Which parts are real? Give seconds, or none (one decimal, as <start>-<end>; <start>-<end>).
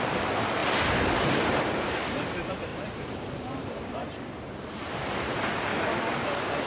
5.7-6.7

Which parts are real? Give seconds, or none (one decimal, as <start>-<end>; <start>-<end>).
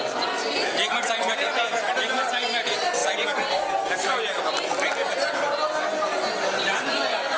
0.0-7.4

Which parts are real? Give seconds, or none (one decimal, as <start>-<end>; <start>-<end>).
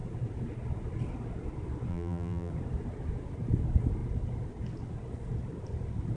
0.0-1.9; 2.5-6.2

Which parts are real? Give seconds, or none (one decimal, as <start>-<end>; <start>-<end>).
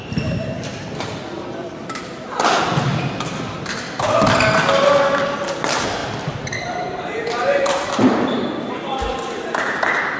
0.0-6.0; 7.9-10.2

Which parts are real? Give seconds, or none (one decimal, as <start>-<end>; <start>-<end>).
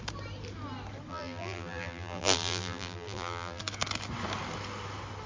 0.0-1.1; 3.6-5.3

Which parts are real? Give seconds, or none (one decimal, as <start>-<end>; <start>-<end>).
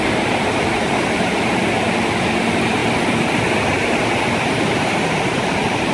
1.3-2.3; 2.8-4.2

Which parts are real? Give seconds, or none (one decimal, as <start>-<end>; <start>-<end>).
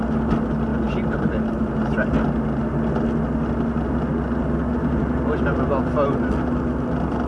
0.0-0.7; 1.6-7.3